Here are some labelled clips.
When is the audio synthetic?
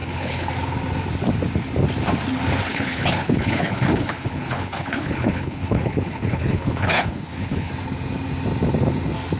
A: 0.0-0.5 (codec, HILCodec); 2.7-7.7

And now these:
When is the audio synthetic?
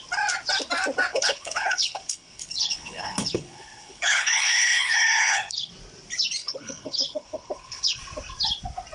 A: 1.1-5.7 (codec, HILCodec); 6.4-8.0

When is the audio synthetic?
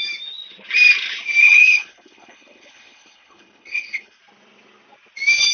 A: 1.4-4.2 (codec, HILCodec)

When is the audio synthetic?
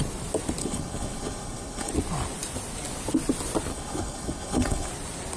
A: 0.6-1.9 (codec, HILCodec); 3.7-4.9